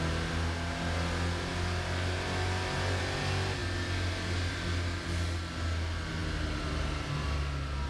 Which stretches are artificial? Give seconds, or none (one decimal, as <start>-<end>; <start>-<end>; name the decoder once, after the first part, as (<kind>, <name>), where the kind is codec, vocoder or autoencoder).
none